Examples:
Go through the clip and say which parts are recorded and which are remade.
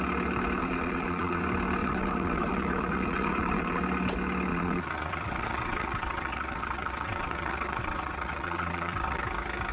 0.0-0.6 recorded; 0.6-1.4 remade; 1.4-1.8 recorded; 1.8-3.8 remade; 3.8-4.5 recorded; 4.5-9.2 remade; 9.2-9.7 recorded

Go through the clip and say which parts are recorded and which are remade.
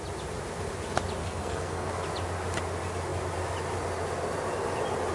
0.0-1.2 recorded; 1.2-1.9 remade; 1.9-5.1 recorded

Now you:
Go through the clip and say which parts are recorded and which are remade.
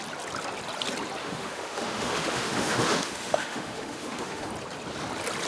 0.0-1.2 recorded; 1.2-4.5 remade; 4.5-5.5 recorded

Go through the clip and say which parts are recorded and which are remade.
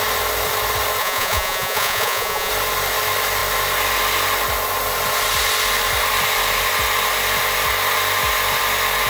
0.0-1.0 recorded; 1.0-2.5 remade; 2.5-9.1 recorded